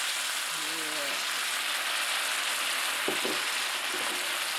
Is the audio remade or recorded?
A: recorded